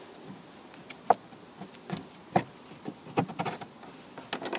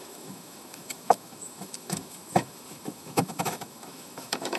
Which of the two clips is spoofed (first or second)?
second